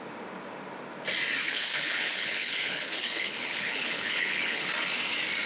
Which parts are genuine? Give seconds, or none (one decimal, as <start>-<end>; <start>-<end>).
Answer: 0.0-1.4; 4.7-5.5